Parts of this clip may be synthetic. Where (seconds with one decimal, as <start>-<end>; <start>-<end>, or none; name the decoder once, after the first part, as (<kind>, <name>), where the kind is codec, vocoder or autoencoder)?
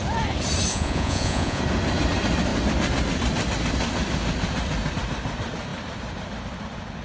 0.7-1.6 (vocoder, Vocos)